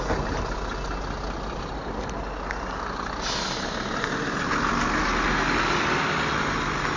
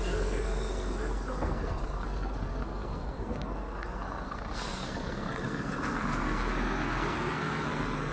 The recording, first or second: first